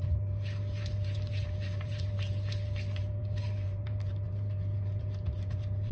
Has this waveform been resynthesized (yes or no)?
yes